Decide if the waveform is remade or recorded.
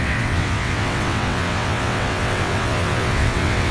remade